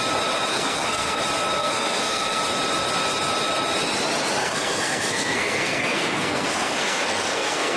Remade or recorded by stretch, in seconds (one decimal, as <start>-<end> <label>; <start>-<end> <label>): 0.0-0.5 recorded; 0.5-1.2 remade; 1.2-1.6 recorded; 1.6-2.4 remade; 2.4-4.4 recorded; 4.4-7.8 remade